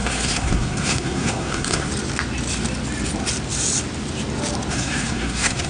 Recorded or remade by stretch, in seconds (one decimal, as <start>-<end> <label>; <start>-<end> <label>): 0.0-1.9 remade; 1.9-4.7 recorded; 4.7-5.7 remade